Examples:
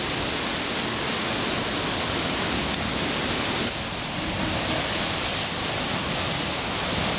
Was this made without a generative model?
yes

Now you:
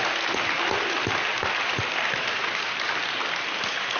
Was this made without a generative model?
yes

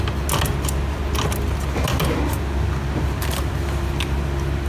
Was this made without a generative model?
yes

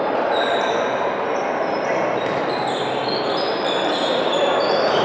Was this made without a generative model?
no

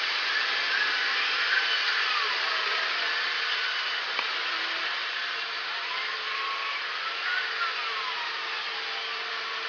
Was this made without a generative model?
no